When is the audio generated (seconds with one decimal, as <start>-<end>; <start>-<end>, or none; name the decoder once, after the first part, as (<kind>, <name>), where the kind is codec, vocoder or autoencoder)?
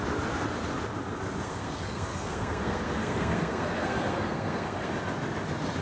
1.4-4.9 (codec, SNAC)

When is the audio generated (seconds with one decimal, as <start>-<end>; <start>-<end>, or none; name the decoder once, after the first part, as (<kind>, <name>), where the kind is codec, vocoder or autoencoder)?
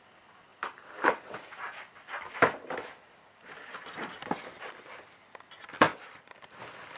0.5-4.7 (vocoder, BigVGAN v2); 5.9-6.6